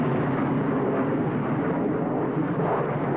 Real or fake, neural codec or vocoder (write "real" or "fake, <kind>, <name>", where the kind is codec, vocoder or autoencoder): real